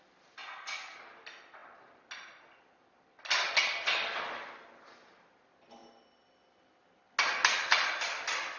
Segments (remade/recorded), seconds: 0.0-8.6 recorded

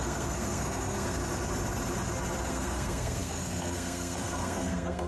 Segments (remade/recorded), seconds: 0.0-1.2 remade; 1.2-2.5 recorded; 2.5-5.1 remade

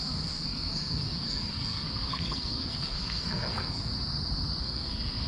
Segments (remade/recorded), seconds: 0.0-3.9 remade; 3.9-4.6 recorded; 4.6-5.3 remade

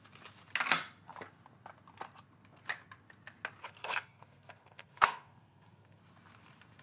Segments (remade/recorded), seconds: 0.0-3.6 recorded; 3.6-6.0 remade; 6.0-6.8 recorded

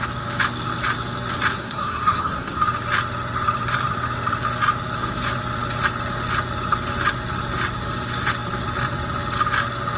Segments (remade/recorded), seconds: 0.0-1.5 recorded; 1.5-2.6 remade; 2.6-10.0 recorded

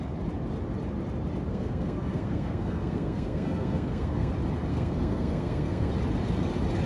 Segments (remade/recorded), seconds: 0.0-1.5 recorded; 1.5-4.3 remade; 4.3-4.7 recorded; 4.7-5.9 remade; 5.9-6.9 recorded

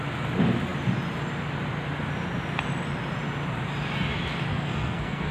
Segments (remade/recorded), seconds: 0.0-4.5 recorded; 4.5-5.3 remade

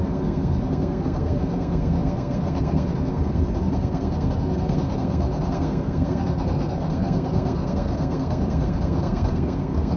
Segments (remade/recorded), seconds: 0.0-10.0 remade